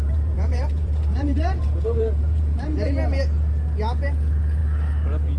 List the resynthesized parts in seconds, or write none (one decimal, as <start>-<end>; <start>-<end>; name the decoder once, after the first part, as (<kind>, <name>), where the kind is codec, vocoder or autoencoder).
0.0-2.9 (vocoder, BigVGAN v2)